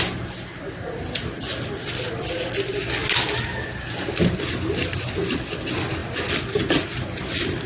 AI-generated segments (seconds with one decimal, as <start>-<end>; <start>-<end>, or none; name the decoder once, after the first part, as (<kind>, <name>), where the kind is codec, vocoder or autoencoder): 6.0-7.7 (vocoder, BigVGAN v2)